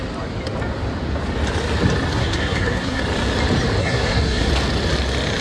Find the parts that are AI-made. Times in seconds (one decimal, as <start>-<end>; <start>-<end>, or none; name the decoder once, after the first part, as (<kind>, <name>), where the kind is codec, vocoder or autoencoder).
2.1-3.0 (codec, SNAC); 3.8-4.5